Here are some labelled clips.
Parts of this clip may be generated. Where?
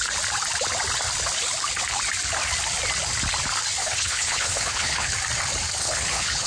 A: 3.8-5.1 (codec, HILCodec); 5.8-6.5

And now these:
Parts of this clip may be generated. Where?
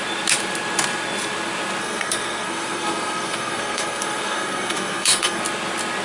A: 1.8-5.4 (codec, SNAC)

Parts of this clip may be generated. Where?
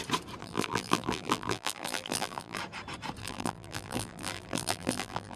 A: 0.4-2.6 (vocoder, BigVGAN v2); 3.2-5.4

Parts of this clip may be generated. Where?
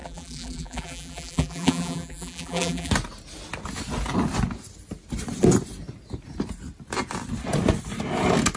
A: 0.0-2.9 (vocoder, BigVGAN v2)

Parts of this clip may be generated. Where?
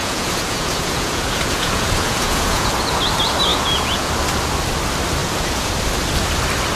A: 0.0-2.7 (vocoder, Vocos); 3.5-4.1; 5.2-5.7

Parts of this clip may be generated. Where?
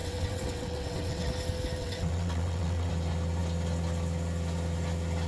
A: 0.0-1.3 (vocoder, WaveNeXt); 1.8-2.9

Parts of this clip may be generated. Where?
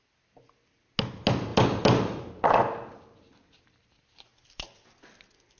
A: none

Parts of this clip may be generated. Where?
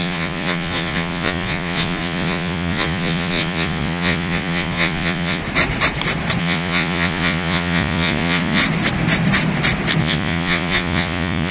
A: 0.0-5.4 (vocoder, Vocos); 6.4-8.6; 10.0-11.5